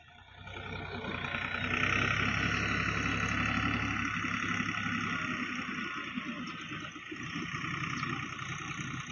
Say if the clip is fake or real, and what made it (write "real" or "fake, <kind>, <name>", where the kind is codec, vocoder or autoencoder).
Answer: real